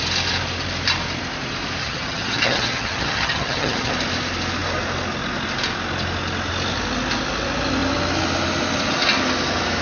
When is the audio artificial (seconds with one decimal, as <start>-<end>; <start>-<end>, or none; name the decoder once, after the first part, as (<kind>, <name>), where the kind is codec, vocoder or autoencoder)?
1.8-3.9 (vocoder, HiFi-GAN)